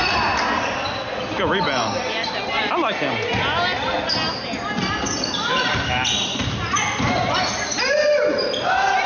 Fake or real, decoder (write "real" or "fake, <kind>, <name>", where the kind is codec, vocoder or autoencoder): real